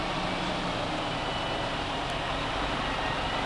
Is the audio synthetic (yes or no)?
no